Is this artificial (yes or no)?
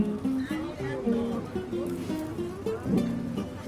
no